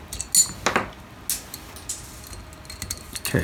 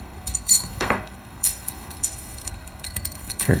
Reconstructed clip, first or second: second